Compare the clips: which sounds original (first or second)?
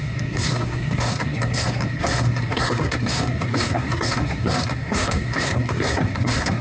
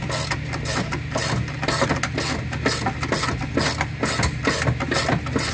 second